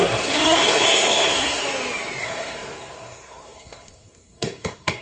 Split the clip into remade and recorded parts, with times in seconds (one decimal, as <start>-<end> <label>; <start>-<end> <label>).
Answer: 0.0-1.6 remade; 1.6-2.2 recorded; 2.2-5.0 remade